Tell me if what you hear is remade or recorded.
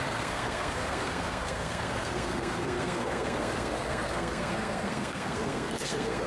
remade